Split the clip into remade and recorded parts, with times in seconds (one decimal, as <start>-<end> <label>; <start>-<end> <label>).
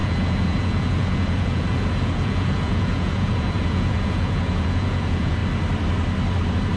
0.0-5.4 remade; 5.4-6.8 recorded